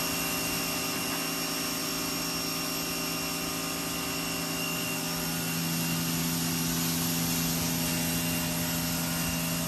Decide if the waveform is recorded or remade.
recorded